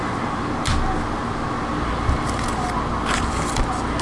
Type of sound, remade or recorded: recorded